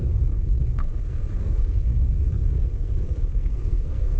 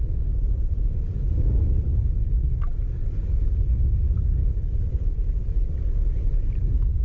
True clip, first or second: second